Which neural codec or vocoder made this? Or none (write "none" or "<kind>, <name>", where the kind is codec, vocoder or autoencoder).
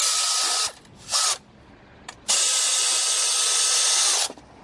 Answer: none